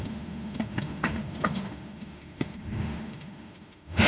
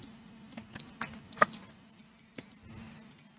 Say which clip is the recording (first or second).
second